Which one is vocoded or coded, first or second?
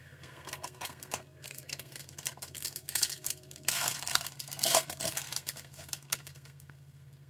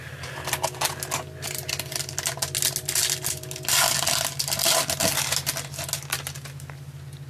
first